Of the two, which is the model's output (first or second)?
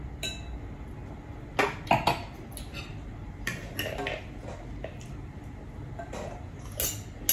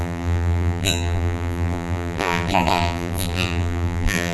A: second